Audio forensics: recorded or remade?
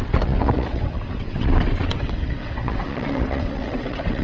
remade